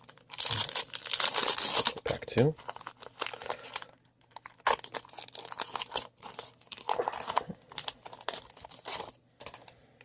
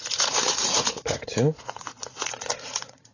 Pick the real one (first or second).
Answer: first